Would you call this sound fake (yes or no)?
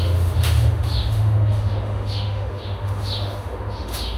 yes